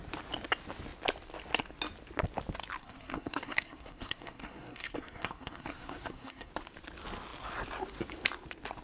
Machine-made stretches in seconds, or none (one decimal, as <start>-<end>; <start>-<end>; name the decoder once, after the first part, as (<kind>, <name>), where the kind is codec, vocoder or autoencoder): 2.8-6.5 (codec, SNAC)